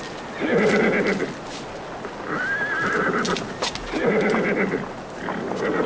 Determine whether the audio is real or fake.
real